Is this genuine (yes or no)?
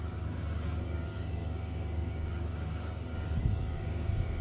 no